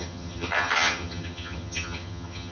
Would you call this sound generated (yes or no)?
yes